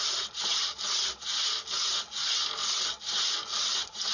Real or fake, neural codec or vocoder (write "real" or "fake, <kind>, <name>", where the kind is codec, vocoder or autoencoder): real